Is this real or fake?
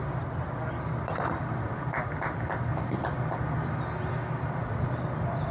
real